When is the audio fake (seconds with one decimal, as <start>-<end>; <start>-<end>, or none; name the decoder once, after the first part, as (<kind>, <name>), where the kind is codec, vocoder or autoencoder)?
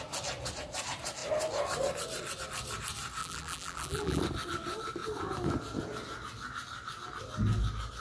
3.2-4.2 (vocoder, BigVGAN v2)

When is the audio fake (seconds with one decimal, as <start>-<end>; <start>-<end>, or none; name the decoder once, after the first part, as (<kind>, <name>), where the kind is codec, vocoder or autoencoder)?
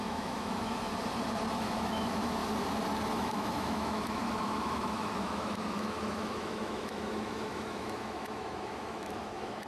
0.0-0.9 (autoencoder, DAC-VAE); 1.5-2.4; 3.1-9.7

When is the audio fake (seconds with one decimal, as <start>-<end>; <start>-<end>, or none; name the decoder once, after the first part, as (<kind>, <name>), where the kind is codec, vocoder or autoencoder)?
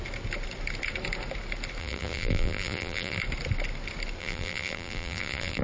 1.8-3.2 (vocoder, BigVGAN v2); 4.2-5.6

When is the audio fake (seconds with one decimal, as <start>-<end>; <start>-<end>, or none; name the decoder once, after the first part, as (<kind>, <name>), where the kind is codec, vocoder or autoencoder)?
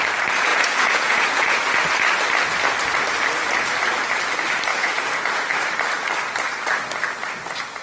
0.5-1.8 (vocoder, Vocos); 4.7-5.4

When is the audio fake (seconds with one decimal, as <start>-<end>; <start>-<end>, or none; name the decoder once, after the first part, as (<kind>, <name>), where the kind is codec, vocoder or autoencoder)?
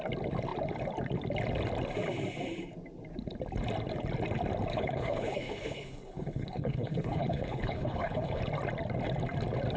4.7-8.4 (codec, HILCodec)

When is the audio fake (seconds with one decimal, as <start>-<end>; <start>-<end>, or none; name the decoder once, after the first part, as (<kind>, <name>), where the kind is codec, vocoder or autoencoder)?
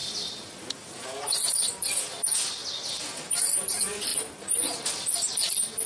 none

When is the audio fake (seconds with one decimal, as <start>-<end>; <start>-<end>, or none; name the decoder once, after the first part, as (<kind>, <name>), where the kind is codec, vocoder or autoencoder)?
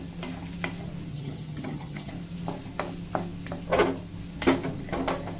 1.1-2.1 (vocoder, HiFi-GAN)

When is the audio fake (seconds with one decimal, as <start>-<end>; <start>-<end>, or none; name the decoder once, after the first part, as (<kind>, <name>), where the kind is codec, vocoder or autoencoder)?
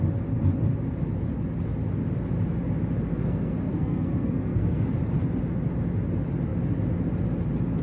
3.1-4.9 (codec, SNAC)